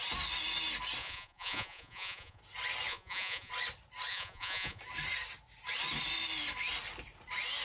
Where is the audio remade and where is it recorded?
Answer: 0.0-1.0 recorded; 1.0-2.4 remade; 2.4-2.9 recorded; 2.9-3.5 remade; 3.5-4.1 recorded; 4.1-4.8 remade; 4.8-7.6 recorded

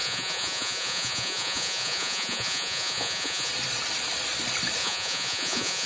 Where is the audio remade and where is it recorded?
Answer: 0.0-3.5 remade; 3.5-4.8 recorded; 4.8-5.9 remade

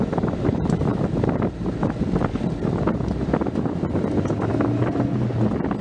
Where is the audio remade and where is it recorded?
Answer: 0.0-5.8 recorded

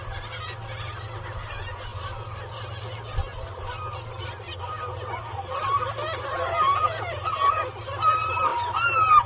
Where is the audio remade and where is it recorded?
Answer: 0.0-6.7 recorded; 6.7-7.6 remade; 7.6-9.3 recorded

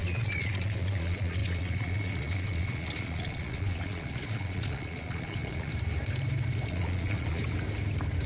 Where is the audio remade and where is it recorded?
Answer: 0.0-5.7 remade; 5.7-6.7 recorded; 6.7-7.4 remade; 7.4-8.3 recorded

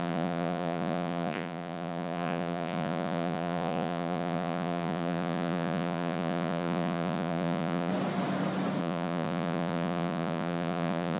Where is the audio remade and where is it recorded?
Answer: 0.0-7.9 remade; 7.9-8.8 recorded; 8.8-11.2 remade

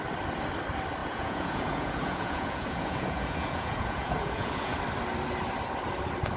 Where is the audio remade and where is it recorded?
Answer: 0.0-1.0 recorded; 1.0-4.8 remade; 4.8-6.4 recorded